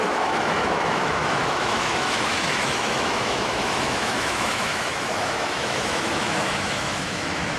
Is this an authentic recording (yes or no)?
no